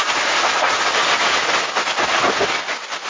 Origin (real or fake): real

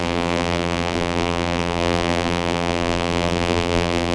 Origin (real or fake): fake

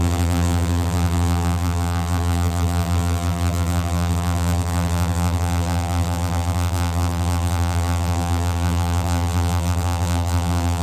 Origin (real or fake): fake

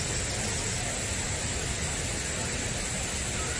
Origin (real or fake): real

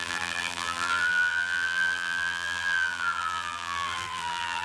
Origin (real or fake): fake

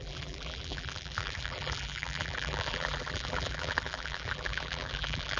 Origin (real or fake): fake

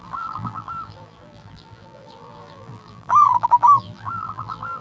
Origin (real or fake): fake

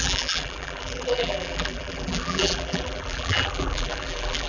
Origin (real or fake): fake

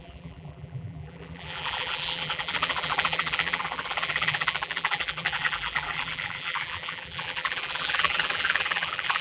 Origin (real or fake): fake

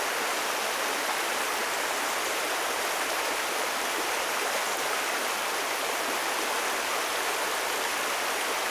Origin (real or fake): real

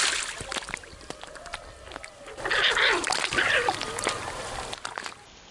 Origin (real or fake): real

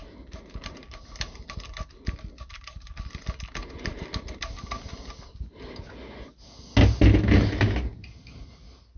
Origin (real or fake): real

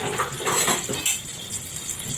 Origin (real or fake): real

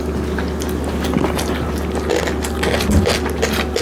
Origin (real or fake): real